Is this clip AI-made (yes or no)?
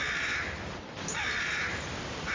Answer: no